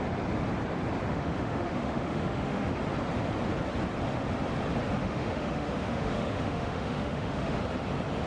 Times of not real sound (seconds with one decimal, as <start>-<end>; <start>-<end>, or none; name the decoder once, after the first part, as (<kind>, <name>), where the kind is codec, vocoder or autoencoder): 1.1-2.8 (autoencoder, DAC-VAE); 5.0-7.6